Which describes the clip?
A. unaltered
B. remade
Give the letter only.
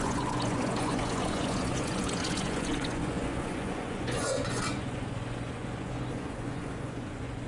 B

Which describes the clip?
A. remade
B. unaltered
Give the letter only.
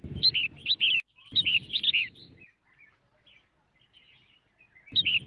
B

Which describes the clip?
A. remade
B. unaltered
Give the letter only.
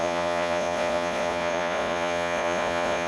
A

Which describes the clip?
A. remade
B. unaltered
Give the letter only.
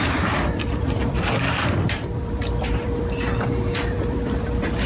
A